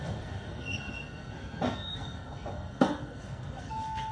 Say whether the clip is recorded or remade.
remade